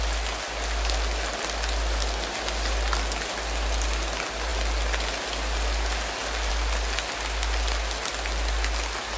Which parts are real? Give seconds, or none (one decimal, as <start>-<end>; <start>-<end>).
0.0-9.2